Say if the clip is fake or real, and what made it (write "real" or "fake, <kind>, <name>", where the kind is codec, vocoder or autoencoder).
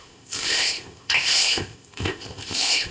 fake, codec, ZipCodec